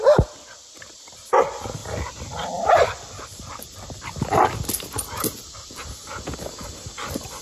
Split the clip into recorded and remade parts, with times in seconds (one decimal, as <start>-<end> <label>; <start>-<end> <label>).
0.0-1.8 recorded; 1.8-4.3 remade; 4.3-7.4 recorded